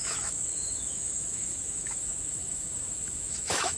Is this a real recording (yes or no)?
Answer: no